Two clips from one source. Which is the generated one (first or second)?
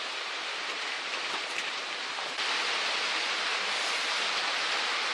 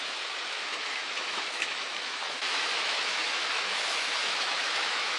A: second